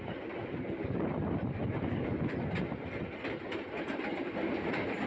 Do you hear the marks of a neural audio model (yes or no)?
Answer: no